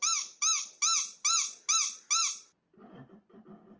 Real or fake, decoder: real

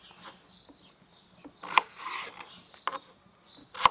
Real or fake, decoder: real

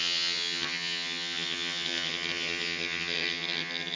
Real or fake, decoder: fake, vocoder, HiFi-GAN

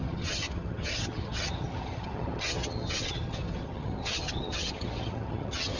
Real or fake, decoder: fake, vocoder, HiFi-GAN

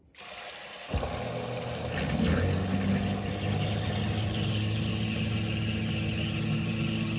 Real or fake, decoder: real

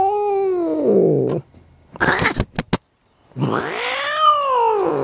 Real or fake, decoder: real